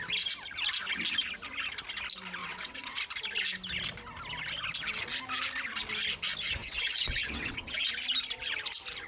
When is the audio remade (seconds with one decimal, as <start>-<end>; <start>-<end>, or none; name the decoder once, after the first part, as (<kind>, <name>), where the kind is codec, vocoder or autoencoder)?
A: 2.4-3.0 (vocoder, WaveNeXt); 6.6-7.9